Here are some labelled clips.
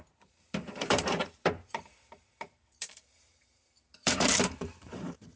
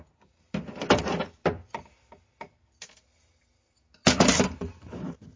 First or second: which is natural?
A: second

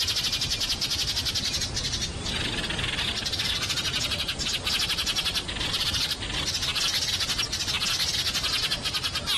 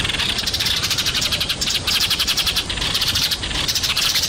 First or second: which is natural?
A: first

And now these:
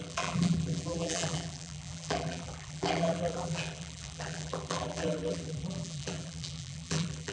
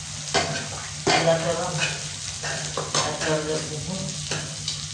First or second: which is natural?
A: second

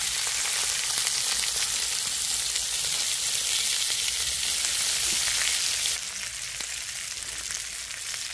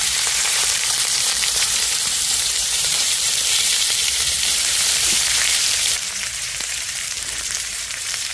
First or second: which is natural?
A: first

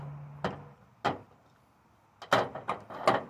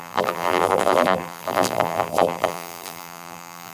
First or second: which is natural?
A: first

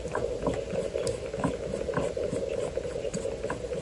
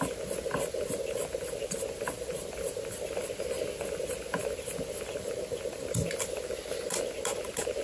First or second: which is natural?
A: first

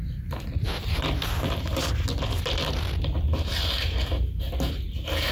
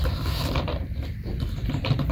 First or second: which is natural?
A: first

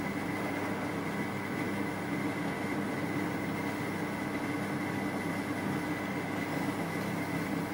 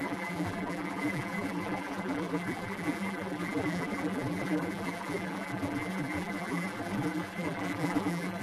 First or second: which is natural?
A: first